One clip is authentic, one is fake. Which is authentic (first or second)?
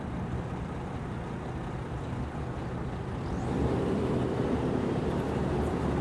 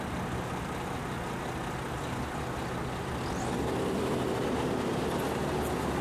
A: second